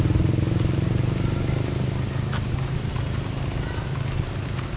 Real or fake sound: real